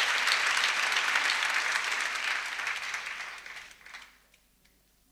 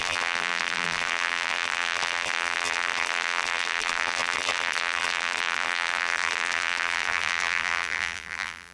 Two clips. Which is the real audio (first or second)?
first